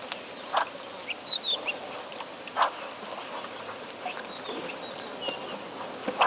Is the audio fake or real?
real